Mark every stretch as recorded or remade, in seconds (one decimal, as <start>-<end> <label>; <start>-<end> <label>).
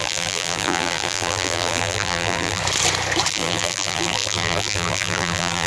0.0-2.6 remade; 2.6-3.3 recorded; 3.3-5.7 remade